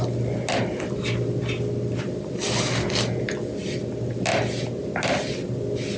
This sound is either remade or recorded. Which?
recorded